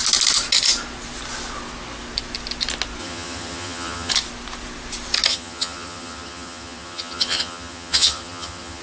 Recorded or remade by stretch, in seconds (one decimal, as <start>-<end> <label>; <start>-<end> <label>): 0.0-3.0 recorded; 3.0-4.1 remade; 4.1-5.3 recorded; 5.3-8.8 remade